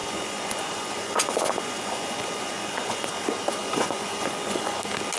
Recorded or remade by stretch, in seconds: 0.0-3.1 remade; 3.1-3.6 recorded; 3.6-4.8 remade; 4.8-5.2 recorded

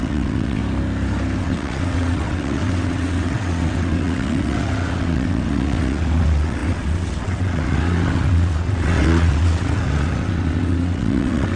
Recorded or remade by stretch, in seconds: 0.0-0.6 remade; 0.6-1.4 recorded; 1.4-11.6 remade

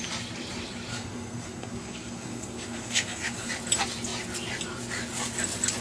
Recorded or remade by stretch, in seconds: 0.0-0.9 recorded; 0.9-3.5 remade; 3.5-5.8 recorded

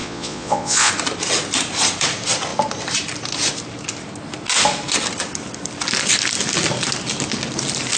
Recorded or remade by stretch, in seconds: 0.0-0.9 remade; 0.9-8.0 recorded

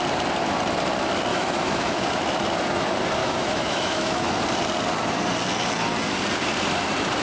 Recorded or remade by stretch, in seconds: 0.0-1.3 recorded; 1.3-2.2 remade; 2.2-3.2 recorded; 3.2-4.3 remade; 4.3-7.2 recorded

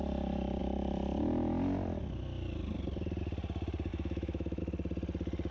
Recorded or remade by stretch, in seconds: 0.0-3.9 recorded; 3.9-4.6 remade; 4.6-5.5 recorded